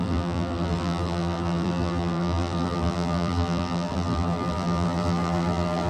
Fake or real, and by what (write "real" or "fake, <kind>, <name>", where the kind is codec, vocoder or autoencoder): fake, vocoder, BigVGAN v2